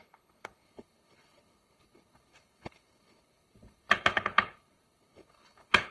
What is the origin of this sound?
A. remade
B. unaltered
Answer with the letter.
A